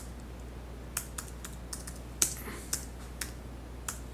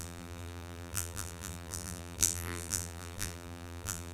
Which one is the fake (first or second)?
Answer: second